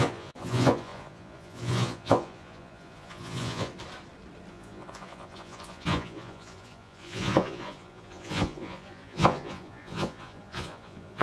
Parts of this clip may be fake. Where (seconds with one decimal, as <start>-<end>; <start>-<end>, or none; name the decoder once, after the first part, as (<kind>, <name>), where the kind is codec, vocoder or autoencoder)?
0.0-3.7 (vocoder, Vocos); 4.5-11.2